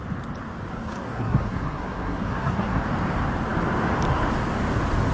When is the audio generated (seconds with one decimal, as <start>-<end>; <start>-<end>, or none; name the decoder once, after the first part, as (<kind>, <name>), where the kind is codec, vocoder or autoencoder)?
0.7-2.8 (codec, SNAC)